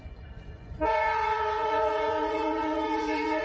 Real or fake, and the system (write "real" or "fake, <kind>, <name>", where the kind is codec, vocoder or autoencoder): fake, vocoder, Vocos